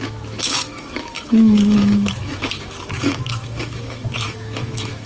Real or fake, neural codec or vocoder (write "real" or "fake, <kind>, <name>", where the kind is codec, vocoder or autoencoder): fake, autoencoder, DAC-VAE